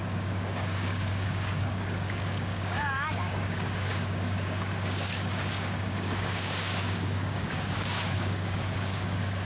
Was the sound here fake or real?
fake